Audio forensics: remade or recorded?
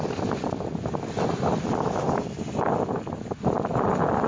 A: recorded